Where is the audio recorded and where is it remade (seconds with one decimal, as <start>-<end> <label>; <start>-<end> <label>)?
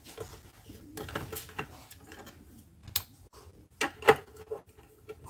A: 0.0-5.3 recorded